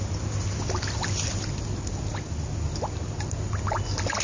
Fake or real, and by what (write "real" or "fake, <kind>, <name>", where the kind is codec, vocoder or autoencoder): real